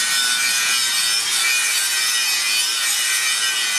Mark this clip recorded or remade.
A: recorded